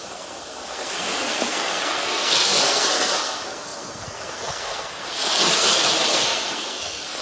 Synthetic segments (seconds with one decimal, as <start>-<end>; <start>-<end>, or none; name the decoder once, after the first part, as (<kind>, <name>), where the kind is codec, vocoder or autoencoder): 0.0-7.2 (codec, SNAC)